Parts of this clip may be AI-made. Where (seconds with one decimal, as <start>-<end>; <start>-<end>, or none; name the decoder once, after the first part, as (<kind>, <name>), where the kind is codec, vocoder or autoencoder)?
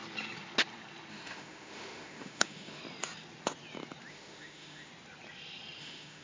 1.1-2.8 (autoencoder, DAC-VAE); 4.1-4.9; 5.8-6.2